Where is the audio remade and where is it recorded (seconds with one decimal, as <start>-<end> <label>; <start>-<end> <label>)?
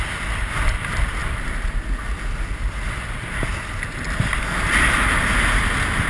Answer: 0.0-1.2 recorded; 1.2-1.8 remade; 1.8-6.1 recorded